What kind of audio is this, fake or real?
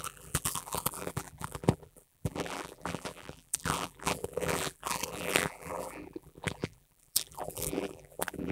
fake